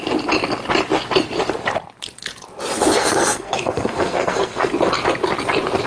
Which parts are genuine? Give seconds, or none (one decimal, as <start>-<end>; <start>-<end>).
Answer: 0.0-3.0; 4.7-5.9